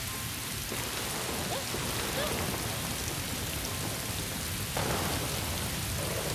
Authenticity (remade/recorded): recorded